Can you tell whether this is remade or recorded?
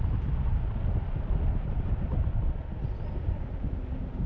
recorded